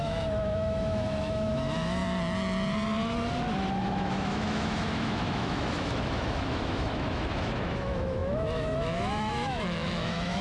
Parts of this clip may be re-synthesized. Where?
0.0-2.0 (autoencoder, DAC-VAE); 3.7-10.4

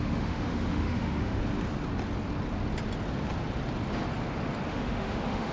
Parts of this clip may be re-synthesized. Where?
0.0-1.4 (autoencoder, DAC-VAE); 4.7-5.5

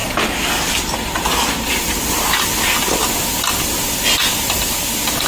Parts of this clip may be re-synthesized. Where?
none